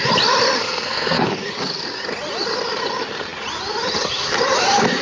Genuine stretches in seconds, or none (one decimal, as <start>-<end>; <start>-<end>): 0.0-0.6; 1.3-5.0